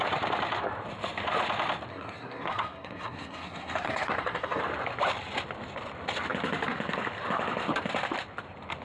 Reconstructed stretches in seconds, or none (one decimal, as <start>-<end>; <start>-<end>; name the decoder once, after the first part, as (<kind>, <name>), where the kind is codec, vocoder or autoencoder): 1.9-4.6 (codec, SNAC)